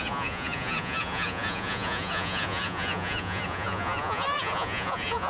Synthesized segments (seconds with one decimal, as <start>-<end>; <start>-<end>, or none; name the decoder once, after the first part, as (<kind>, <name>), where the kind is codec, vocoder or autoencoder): 0.0-5.3 (vocoder, Vocos)